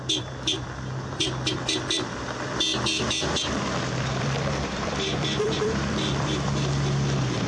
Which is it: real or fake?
fake